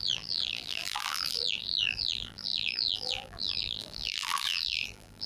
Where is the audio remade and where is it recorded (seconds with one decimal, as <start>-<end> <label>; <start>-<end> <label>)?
0.0-5.3 remade

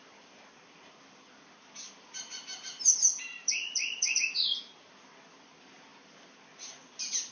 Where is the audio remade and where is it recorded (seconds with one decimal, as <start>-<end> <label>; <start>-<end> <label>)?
0.0-3.0 recorded; 3.0-4.6 remade; 4.6-7.3 recorded

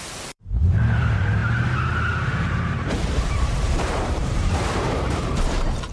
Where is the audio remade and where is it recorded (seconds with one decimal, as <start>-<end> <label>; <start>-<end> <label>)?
0.0-1.4 remade; 1.4-2.5 recorded; 2.5-5.9 remade

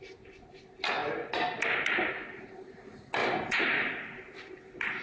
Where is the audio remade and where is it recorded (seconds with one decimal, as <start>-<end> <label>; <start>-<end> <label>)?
0.0-3.2 recorded; 3.2-4.6 remade; 4.6-5.0 recorded

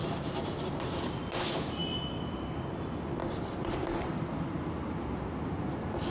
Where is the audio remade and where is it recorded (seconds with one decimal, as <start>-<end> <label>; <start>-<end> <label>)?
0.0-3.2 recorded; 3.2-6.1 remade

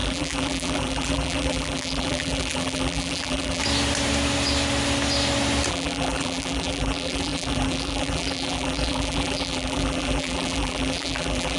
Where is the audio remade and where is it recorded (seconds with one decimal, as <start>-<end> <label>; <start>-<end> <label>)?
0.0-3.6 remade; 3.6-5.7 recorded; 5.7-11.6 remade